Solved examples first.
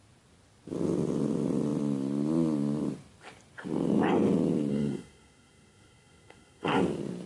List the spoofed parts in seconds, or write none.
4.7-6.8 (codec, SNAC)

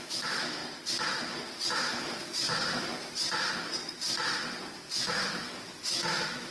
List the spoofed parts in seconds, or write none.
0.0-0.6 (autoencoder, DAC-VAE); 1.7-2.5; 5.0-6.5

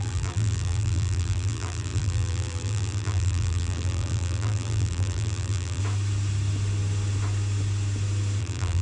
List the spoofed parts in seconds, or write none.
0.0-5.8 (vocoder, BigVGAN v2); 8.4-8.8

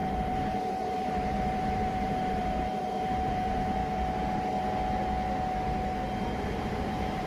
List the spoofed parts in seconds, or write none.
0.0-3.8 (vocoder, BigVGAN v2); 6.4-7.3